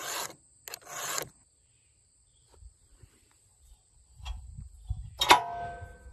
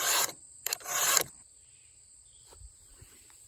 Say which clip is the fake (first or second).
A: second